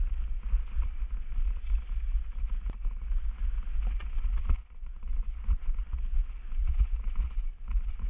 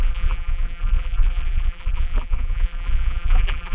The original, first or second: first